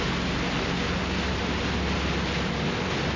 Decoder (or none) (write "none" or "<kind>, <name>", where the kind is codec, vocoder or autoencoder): none